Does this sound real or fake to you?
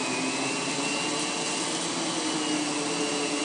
real